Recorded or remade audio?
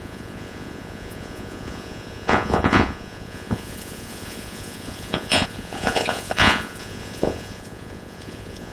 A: remade